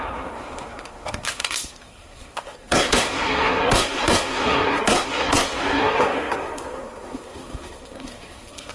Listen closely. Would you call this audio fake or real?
fake